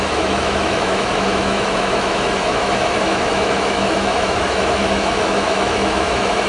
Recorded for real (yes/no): no